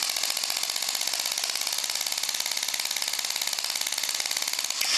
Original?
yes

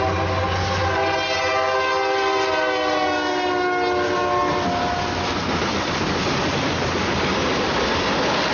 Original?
yes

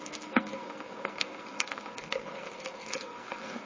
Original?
no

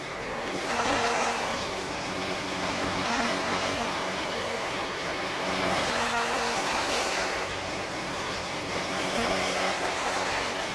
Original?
no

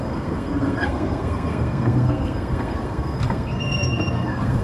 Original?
no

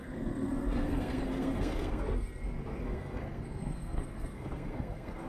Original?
no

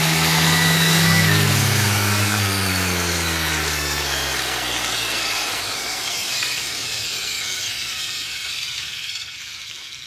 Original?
no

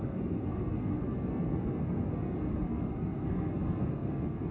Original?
no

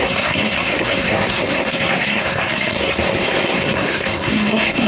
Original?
no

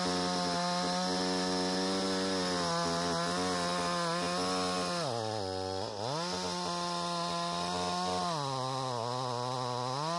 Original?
yes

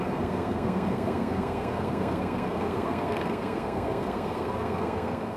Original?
no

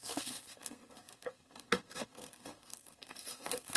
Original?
no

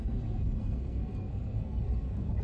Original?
no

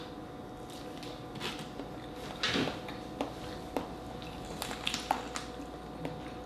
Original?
yes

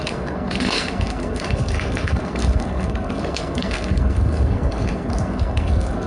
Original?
no